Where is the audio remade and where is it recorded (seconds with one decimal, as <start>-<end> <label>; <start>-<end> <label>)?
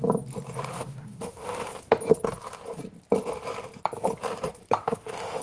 0.0-0.7 recorded; 0.7-1.9 remade; 1.9-4.8 recorded; 4.8-5.4 remade